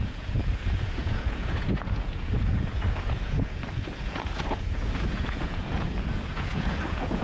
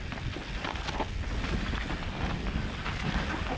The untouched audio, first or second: second